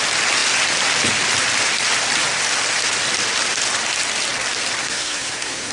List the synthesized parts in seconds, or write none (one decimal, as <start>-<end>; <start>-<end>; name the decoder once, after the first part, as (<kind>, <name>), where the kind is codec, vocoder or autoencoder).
4.8-5.7 (codec, SNAC)